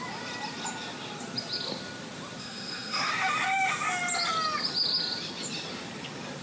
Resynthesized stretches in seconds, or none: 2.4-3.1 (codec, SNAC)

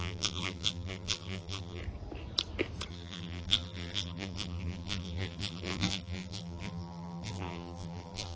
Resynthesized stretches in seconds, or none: 0.0-1.8 (vocoder, BigVGAN v2); 2.9-8.4

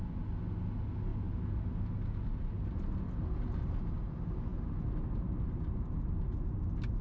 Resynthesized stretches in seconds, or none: none

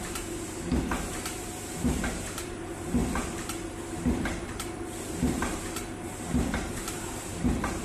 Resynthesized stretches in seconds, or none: 0.0-3.0 (vocoder, BigVGAN v2); 5.0-7.8

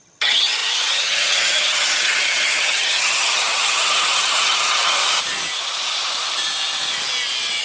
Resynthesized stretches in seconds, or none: 0.0-5.0 (vocoder, HiFi-GAN)